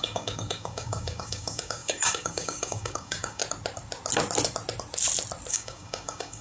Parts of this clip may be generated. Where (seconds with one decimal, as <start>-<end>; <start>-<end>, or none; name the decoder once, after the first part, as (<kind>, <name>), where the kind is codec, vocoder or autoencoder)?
0.0-3.4 (codec, DAC); 5.5-6.4

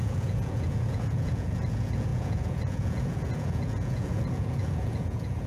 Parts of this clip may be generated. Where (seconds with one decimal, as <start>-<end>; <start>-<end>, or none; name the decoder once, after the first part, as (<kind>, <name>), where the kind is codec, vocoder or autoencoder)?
0.0-5.5 (vocoder, Vocos)

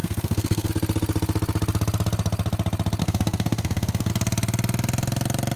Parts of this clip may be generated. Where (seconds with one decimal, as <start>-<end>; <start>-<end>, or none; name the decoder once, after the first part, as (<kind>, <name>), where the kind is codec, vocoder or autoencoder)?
0.0-0.7 (codec, SNAC); 3.0-4.1

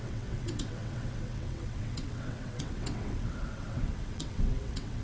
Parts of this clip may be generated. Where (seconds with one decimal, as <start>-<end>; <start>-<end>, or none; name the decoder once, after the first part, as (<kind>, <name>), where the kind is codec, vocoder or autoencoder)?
0.0-5.0 (vocoder, WaveNeXt)

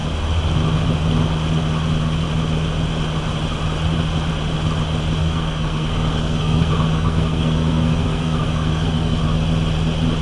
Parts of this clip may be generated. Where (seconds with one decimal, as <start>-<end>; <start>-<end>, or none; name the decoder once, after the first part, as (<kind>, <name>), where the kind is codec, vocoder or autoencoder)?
5.2-9.2 (codec, SNAC)

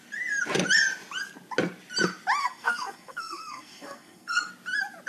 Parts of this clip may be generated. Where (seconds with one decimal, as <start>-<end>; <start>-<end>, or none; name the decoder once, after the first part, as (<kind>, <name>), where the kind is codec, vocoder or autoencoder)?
2.4-4.5 (codec, SNAC)

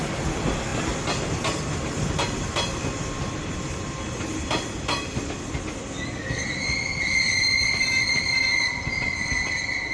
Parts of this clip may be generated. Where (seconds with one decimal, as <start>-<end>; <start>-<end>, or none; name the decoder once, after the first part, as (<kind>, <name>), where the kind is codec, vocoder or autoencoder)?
none

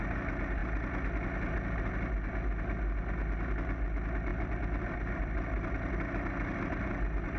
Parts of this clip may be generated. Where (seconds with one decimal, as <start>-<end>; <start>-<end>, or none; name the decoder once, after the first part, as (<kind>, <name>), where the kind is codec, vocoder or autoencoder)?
4.3-7.4 (vocoder, BigVGAN v2)